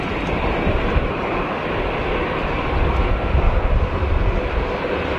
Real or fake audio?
real